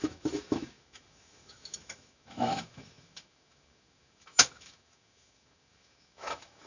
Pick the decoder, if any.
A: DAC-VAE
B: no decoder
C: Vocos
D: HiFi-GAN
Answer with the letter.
A